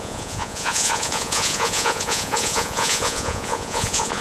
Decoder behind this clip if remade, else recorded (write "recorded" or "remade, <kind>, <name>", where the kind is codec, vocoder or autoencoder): remade, vocoder, Vocos